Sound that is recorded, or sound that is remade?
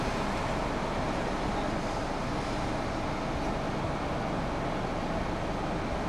recorded